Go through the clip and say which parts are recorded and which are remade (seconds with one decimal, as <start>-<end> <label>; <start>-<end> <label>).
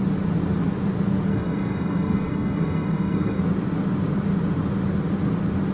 0.0-1.3 recorded; 1.3-3.4 remade; 3.4-5.7 recorded